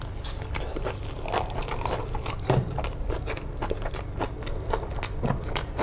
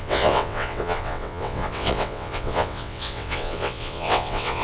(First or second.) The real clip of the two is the first